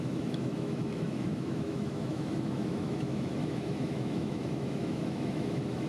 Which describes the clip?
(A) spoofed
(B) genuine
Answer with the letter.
A